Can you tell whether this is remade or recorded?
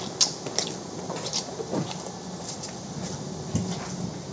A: recorded